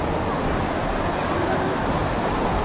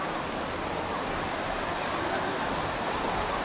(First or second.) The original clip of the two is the first